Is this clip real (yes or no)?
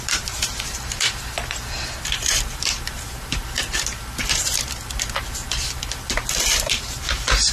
no